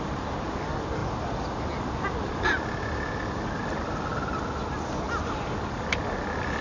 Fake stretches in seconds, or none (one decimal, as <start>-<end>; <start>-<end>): none